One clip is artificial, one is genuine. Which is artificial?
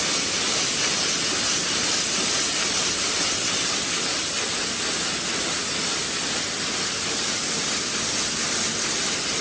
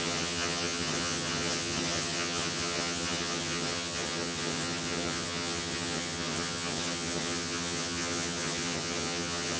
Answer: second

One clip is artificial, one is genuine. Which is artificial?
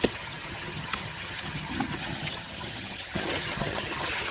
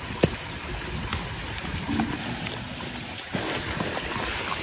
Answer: first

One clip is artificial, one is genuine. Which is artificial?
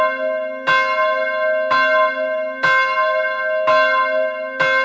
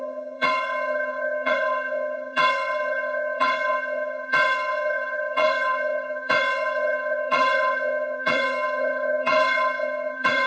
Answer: second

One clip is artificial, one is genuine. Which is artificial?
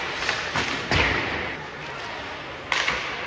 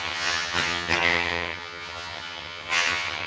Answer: second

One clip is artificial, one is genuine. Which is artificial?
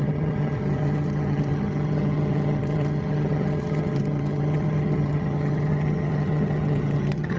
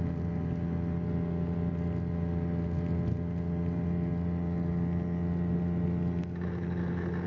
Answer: first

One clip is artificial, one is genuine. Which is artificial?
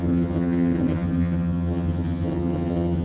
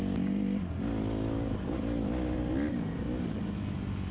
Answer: first